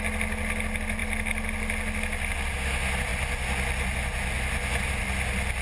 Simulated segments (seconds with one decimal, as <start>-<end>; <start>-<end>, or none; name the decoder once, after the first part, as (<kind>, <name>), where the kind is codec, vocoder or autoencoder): none